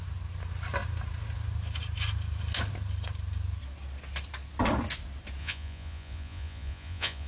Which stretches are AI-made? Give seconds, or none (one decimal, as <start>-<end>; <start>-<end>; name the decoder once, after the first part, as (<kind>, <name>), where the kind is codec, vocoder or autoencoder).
5.4-7.3 (vocoder, Vocos)